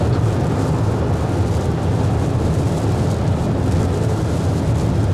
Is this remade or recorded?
recorded